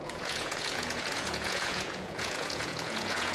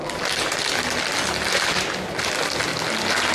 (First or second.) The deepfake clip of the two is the first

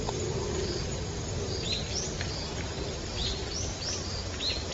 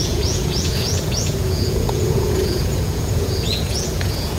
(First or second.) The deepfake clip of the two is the second